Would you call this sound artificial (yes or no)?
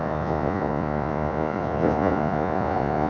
yes